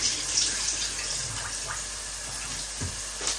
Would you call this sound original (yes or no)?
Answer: yes